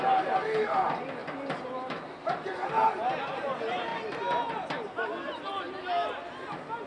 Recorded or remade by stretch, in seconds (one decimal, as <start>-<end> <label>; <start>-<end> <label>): 0.0-6.9 recorded